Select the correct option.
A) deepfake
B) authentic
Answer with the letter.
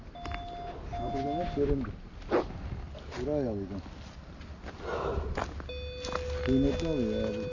B